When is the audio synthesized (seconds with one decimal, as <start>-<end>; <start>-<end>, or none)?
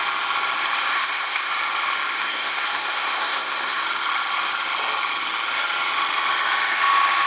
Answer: 0.9-1.5; 2.2-3.8